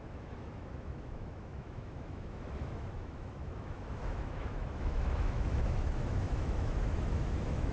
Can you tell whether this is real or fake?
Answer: fake